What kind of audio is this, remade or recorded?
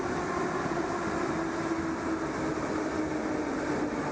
recorded